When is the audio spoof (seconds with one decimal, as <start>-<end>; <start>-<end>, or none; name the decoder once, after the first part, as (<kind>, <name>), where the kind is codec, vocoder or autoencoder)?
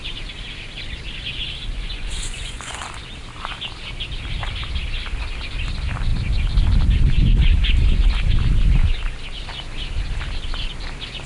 1.7-2.8 (vocoder, Vocos)